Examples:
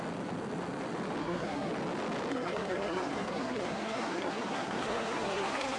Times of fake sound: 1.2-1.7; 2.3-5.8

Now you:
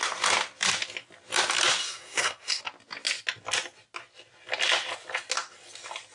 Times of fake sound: 1.8-2.6

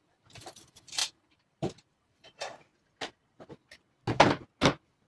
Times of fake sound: 0.0-2.7

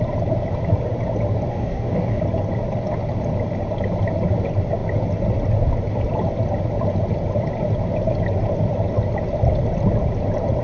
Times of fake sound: 1.5-2.2

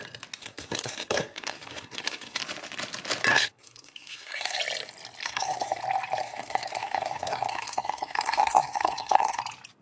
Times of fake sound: 0.4-2.4; 3.3-4.6; 5.2-5.8; 6.2-9.4

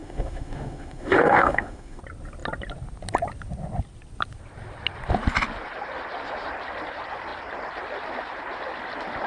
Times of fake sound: 0.0-2.0

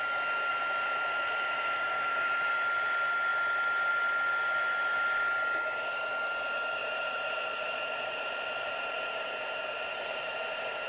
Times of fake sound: 0.5-2.5; 6.8-10.9

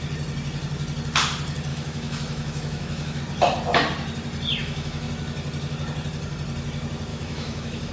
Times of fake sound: 1.7-3.2; 4.6-5.1; 7.1-7.9